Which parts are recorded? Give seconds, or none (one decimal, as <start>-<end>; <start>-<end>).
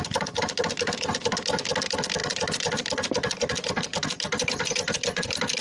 0.0-5.6